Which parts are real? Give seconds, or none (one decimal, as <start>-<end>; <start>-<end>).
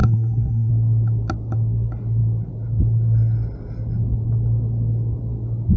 0.7-5.8